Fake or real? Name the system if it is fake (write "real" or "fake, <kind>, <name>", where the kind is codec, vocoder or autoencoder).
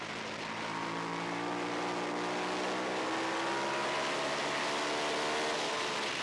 real